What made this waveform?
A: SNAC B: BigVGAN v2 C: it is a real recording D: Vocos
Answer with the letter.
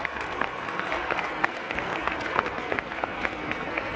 A